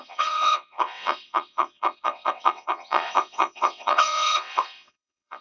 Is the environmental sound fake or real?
fake